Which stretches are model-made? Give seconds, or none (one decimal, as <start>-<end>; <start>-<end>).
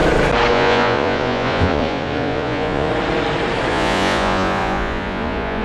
0.5-2.9; 3.7-5.6